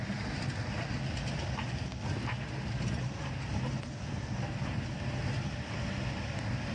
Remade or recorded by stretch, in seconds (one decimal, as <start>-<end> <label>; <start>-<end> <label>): 0.0-6.7 recorded